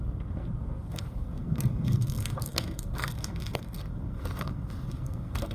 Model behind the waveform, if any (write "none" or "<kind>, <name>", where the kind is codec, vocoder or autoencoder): codec, SNAC